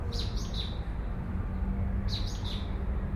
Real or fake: real